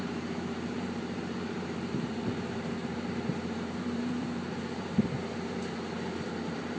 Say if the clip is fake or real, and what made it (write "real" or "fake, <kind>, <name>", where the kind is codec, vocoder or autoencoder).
fake, vocoder, BigVGAN v2